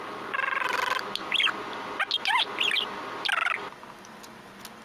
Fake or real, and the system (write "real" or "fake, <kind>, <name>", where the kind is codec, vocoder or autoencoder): real